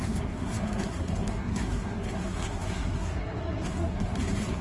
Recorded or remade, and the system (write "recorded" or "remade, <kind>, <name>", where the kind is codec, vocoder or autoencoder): remade, codec, SNAC